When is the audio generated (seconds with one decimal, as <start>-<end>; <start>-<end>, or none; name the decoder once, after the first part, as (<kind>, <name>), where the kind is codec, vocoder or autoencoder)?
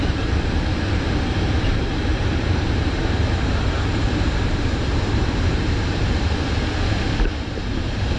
2.1-5.2 (vocoder, BigVGAN v2)